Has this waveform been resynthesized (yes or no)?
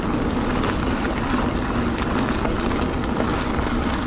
no